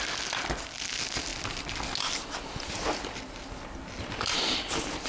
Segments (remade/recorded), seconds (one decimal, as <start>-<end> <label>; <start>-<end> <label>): 0.0-5.1 recorded